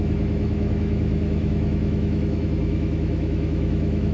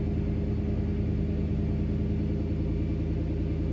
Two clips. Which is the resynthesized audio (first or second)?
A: first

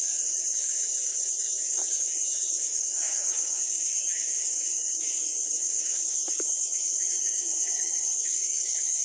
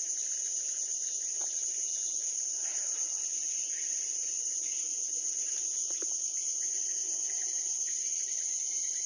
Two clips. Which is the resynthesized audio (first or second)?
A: first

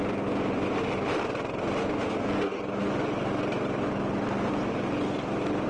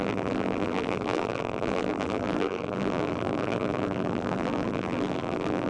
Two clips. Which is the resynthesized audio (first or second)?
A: second